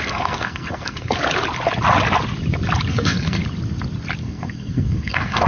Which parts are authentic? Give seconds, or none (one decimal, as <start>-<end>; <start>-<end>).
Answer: 1.2-2.9; 3.4-4.2